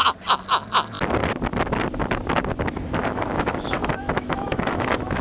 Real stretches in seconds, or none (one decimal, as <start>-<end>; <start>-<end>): 0.0-3.1